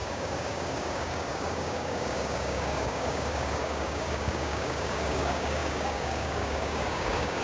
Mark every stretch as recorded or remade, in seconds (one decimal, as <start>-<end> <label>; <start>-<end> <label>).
0.0-7.4 remade